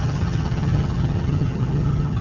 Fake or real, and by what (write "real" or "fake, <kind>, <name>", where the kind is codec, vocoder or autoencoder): fake, vocoder, HiFi-GAN